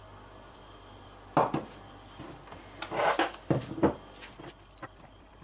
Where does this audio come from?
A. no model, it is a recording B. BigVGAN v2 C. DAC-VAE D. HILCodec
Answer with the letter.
B